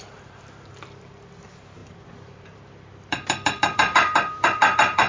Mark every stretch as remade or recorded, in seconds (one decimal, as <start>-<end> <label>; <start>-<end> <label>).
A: 0.0-1.8 recorded; 1.8-5.1 remade